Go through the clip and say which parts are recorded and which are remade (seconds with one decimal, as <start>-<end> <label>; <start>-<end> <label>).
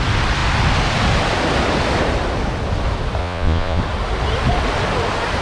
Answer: 0.0-3.2 recorded; 3.2-3.8 remade; 3.8-5.4 recorded